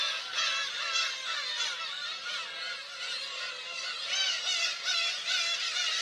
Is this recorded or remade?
recorded